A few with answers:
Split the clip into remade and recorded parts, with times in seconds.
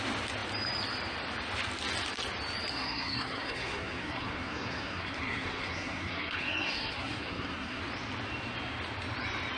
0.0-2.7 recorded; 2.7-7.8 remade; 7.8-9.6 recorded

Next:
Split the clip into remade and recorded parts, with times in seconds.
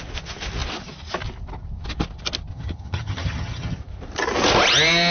0.0-2.5 recorded; 2.5-3.8 remade; 3.8-5.1 recorded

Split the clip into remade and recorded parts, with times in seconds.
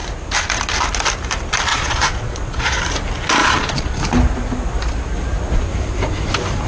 0.0-1.7 recorded; 1.7-2.8 remade; 2.8-3.4 recorded; 3.4-4.0 remade; 4.0-6.7 recorded